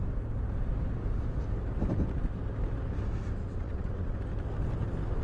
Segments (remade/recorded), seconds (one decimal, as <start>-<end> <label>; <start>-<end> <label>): 0.0-3.4 recorded; 3.4-4.2 remade; 4.2-5.2 recorded